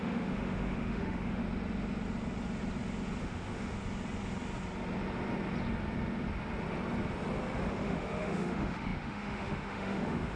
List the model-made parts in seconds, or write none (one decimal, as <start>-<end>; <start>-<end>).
0.0-1.4; 3.2-3.7; 7.7-10.4

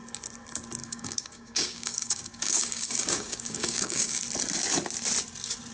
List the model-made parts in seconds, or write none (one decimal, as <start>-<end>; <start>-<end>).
0.8-4.2

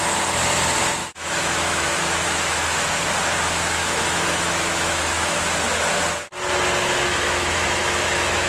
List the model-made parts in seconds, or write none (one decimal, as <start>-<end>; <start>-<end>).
1.0-2.9; 3.8-5.4; 7.1-8.5

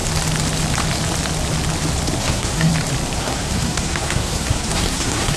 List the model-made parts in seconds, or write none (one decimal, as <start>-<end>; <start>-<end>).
2.2-2.7; 3.2-5.4

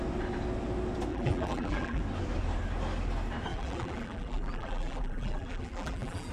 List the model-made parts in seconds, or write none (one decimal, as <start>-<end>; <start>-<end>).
1.1-2.0; 3.5-6.3